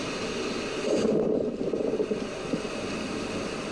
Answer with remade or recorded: recorded